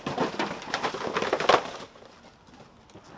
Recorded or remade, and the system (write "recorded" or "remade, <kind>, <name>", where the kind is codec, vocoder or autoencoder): recorded